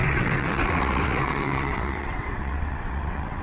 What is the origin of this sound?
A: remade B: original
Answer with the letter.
A